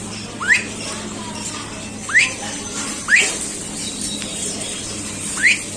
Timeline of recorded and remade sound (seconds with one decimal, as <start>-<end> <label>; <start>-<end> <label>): 0.0-4.3 recorded; 4.3-5.1 remade; 5.1-5.8 recorded